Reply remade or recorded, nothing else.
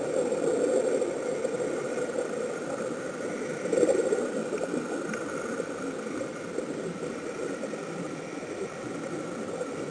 recorded